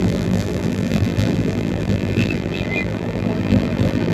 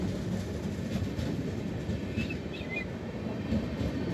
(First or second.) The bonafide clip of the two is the second